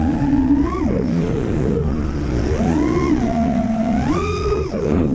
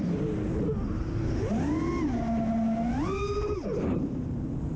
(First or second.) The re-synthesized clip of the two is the first